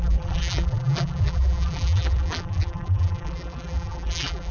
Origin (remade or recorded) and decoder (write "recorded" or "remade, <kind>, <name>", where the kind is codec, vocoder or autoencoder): remade, vocoder, BigVGAN v2